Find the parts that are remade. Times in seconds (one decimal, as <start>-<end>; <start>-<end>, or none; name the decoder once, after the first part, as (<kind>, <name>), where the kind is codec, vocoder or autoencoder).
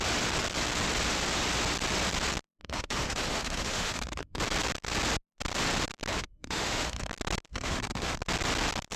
2.6-4.4 (autoencoder, DAC-VAE); 6.1-7.1; 7.5-8.2